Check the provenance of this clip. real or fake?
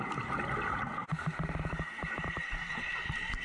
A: real